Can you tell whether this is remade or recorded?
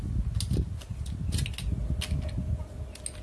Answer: recorded